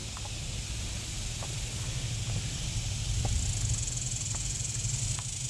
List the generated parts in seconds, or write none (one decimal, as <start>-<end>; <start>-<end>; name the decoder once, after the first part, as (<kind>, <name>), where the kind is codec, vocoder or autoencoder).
none

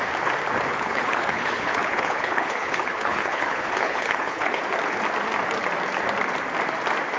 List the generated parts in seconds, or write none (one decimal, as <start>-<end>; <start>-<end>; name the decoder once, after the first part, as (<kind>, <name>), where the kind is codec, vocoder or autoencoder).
0.7-4.6 (codec, HILCodec)

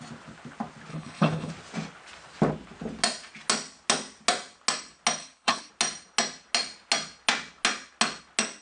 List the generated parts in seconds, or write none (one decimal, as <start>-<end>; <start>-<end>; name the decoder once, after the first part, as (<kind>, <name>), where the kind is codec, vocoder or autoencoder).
0.9-1.5 (codec, HILCodec); 5.2-5.7